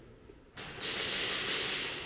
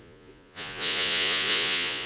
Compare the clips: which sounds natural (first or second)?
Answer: first